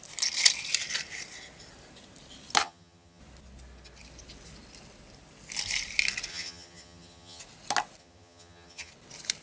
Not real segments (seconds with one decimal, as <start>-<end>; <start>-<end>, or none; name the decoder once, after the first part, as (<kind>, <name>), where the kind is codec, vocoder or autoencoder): 2.6-3.2 (vocoder, HiFi-GAN); 6.3-7.4; 8.0-8.9